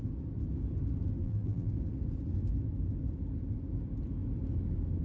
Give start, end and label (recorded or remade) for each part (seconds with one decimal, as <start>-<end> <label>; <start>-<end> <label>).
0.0-1.2 recorded; 1.2-1.7 remade; 1.7-5.0 recorded